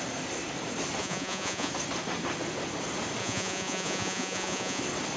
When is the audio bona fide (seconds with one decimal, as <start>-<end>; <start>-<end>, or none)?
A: 0.0-1.0; 1.7-3.2; 4.8-5.2

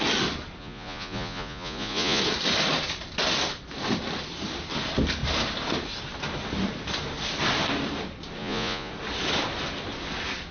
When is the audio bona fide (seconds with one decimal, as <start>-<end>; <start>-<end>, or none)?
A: 0.0-0.6; 2.2-8.4; 8.9-10.5

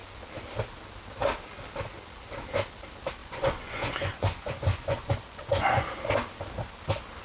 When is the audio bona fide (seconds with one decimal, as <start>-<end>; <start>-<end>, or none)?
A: 0.0-3.2; 6.0-7.2

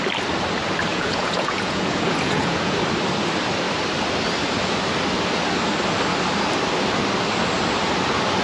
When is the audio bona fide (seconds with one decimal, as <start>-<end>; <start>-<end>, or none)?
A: 0.0-0.9; 2.8-8.4

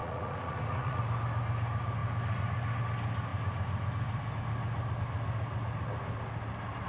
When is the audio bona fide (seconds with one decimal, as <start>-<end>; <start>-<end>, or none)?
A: 1.0-6.9

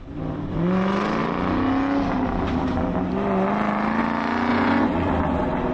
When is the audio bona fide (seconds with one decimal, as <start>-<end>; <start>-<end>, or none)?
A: 0.0-4.5; 5.1-5.7

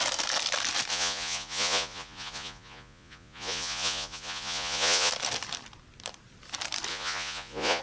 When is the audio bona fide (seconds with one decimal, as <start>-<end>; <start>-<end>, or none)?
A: 0.0-0.9; 5.1-6.9